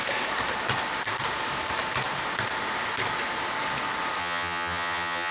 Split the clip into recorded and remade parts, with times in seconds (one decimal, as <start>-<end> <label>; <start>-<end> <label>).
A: 0.0-4.2 recorded; 4.2-5.3 remade